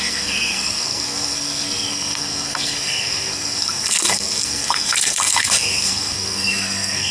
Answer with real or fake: fake